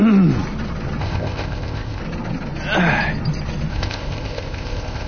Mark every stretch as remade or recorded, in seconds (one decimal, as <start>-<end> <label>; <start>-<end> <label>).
0.0-1.0 recorded; 1.0-2.0 remade; 2.0-3.7 recorded; 3.7-5.1 remade